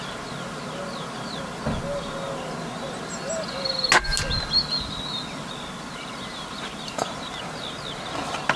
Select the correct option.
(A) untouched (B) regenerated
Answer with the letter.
A